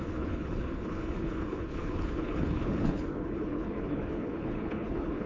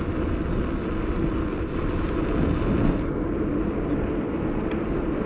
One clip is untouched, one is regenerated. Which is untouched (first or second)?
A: second